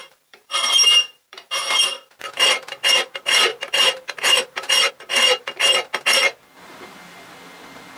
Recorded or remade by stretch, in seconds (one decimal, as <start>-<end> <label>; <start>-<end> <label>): 0.0-1.9 remade; 1.9-3.5 recorded; 3.5-4.9 remade; 4.9-8.0 recorded